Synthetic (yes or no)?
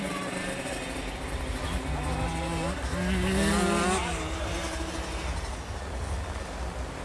no